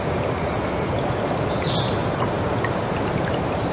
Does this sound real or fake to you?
fake